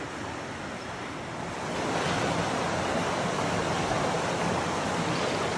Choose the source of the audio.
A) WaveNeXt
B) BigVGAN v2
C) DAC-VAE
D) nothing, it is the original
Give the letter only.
D